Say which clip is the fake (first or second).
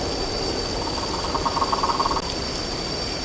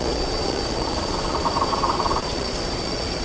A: second